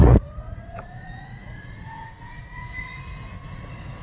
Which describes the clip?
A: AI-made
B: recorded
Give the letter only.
A